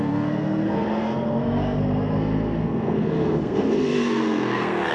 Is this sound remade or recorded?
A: remade